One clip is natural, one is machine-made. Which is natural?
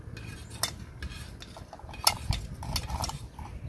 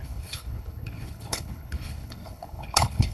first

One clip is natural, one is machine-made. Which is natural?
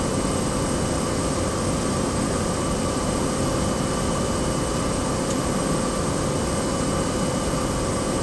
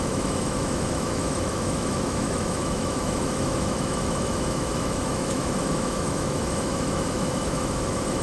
first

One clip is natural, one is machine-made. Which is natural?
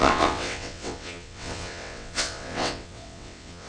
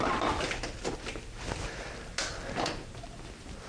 second